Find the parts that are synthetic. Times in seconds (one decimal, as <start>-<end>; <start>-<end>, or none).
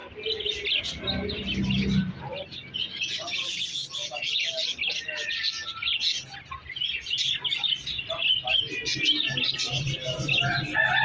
none